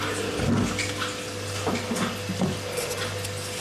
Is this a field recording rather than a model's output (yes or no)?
yes